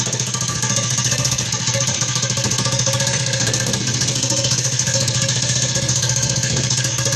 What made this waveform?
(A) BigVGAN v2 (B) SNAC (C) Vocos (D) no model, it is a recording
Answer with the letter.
B